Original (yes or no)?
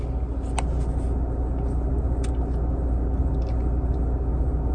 yes